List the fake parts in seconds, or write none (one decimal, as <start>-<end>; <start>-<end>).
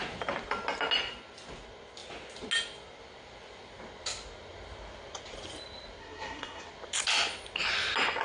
6.0-6.7